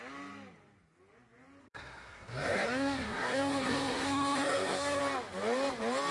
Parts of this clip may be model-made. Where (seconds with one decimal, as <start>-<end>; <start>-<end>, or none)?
1.6-5.0